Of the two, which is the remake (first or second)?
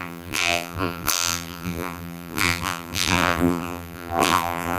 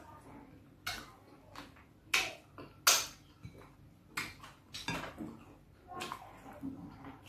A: first